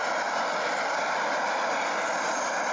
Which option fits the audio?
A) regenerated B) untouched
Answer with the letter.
B